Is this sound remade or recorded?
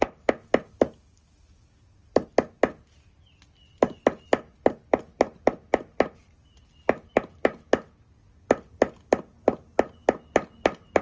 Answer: recorded